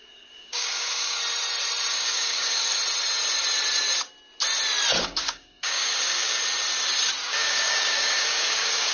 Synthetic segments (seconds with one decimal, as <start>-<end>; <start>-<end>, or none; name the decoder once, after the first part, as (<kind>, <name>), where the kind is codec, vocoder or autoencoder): 0.0-1.2 (codec, DAC); 1.9-2.7; 5.0-6.4; 7.2-8.9